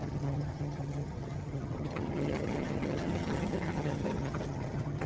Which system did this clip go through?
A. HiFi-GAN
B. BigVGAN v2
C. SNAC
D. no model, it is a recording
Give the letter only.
A